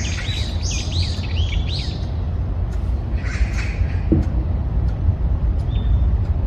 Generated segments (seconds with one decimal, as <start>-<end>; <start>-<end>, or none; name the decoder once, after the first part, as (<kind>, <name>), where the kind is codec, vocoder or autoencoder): 0.9-1.5 (vocoder, BigVGAN v2); 5.1-6.5